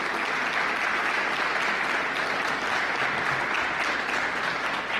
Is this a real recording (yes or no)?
yes